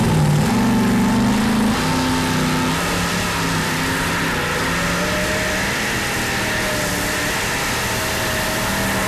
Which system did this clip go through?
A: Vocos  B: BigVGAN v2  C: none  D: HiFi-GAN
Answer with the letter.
C